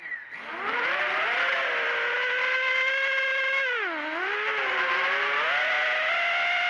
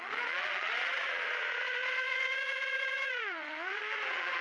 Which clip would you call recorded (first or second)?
first